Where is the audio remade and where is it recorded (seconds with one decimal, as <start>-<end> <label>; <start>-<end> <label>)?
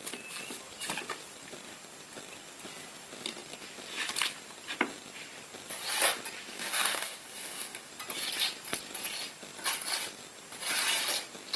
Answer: 0.0-6.5 recorded; 6.5-7.9 remade; 7.9-11.6 recorded